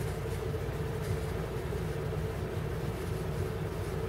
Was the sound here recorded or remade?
recorded